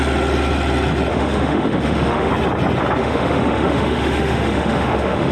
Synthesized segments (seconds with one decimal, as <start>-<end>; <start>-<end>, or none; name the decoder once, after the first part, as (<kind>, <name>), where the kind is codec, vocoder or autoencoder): 1.1-2.3 (autoencoder, DAC-VAE); 3.0-5.3